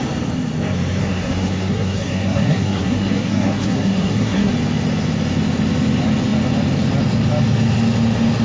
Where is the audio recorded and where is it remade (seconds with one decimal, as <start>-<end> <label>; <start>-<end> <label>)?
0.0-1.0 recorded; 1.0-4.5 remade; 4.5-8.4 recorded